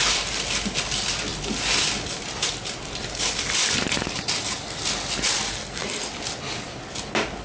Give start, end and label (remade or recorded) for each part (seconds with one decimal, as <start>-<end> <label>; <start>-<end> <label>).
0.0-5.5 recorded; 5.5-6.1 remade; 6.1-7.4 recorded